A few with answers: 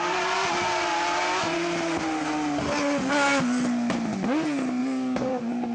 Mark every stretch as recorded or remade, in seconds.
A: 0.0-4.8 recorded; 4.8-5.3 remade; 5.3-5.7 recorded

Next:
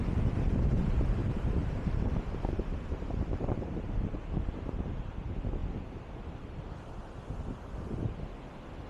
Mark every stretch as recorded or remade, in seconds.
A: 0.0-1.2 recorded; 1.2-5.1 remade; 5.1-8.9 recorded

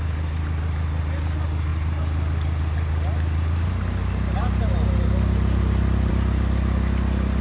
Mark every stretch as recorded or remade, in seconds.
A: 0.0-7.4 recorded

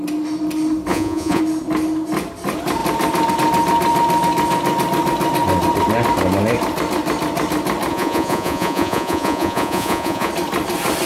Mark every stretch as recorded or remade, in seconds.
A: 0.0-0.9 recorded; 0.9-1.4 remade; 1.4-7.9 recorded; 7.9-10.3 remade; 10.3-11.1 recorded

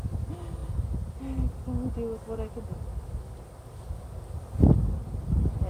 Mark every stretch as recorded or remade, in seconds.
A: 0.0-5.7 recorded

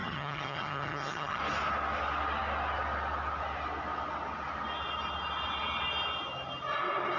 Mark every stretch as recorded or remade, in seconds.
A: 0.0-1.4 remade; 1.4-7.2 recorded